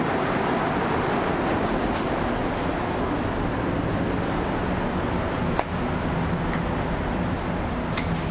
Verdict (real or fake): real